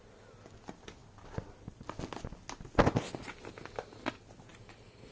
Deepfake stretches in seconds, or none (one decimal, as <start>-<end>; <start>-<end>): none

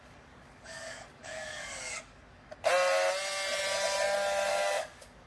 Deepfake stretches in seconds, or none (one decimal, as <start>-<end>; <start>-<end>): 0.0-2.5; 4.5-5.3

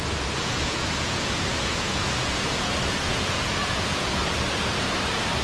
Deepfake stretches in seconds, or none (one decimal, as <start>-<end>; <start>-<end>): 0.0-4.2

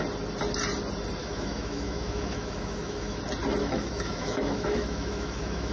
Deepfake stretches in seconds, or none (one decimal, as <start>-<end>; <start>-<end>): 1.2-3.2; 3.6-5.7

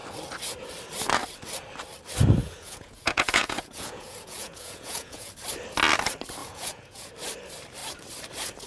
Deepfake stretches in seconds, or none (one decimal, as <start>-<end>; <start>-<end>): 2.4-5.3; 6.4-7.1

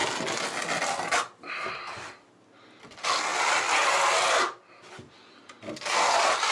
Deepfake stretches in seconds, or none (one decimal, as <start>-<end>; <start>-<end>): none

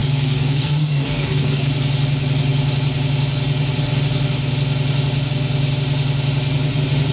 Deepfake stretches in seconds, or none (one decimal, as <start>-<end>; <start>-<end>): 0.0-1.7